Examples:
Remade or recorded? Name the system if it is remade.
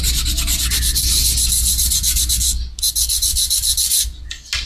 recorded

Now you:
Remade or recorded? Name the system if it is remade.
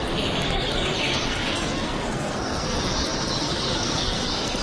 remade, codec, SNAC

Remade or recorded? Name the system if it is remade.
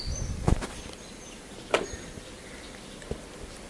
recorded